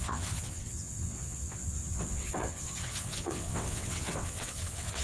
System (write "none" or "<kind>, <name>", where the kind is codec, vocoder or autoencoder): vocoder, WaveNeXt